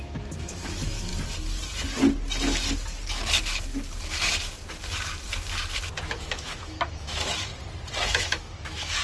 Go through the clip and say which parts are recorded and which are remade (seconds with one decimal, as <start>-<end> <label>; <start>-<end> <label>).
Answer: 0.0-1.1 remade; 1.1-6.1 recorded; 6.1-7.5 remade; 7.5-8.1 recorded; 8.1-9.0 remade